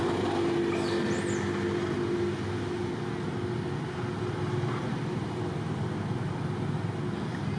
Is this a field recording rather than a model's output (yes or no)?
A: yes